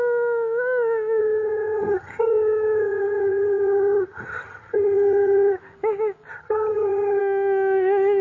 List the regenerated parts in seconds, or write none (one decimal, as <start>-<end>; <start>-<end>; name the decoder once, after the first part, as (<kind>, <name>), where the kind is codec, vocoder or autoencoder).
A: 1.2-5.6 (vocoder, HiFi-GAN); 6.3-7.2